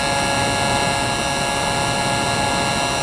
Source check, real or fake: real